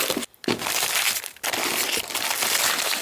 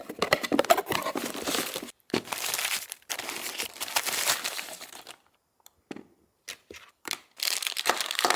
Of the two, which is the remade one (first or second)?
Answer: second